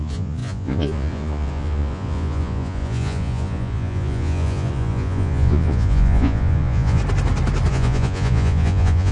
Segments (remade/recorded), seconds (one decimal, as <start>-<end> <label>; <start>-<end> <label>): 0.0-7.0 remade; 7.0-7.7 recorded; 7.7-9.1 remade